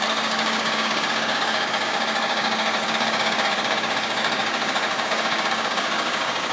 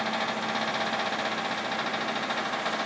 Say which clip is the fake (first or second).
first